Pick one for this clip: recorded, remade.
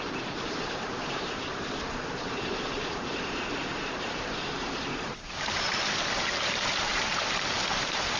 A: remade